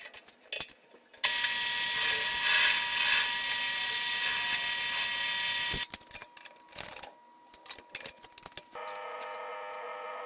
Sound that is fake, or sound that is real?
real